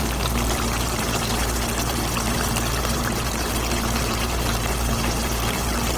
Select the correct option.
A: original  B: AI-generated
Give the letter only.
B